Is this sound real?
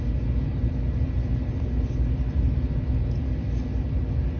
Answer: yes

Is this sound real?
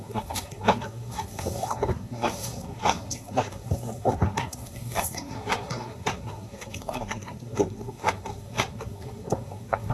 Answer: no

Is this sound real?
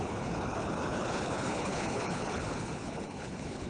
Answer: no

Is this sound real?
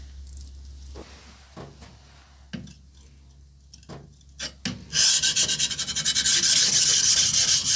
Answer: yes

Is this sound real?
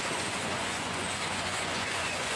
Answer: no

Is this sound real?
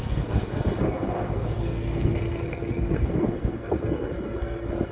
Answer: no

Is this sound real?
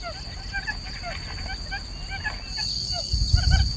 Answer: yes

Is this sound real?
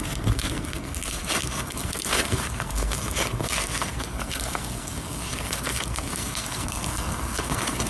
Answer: no